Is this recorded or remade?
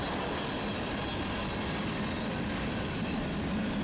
recorded